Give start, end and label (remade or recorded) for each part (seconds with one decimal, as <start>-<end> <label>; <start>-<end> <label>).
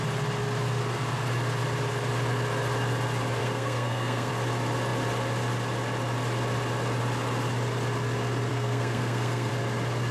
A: 0.0-3.4 recorded; 3.4-4.3 remade; 4.3-8.5 recorded; 8.5-9.5 remade; 9.5-10.1 recorded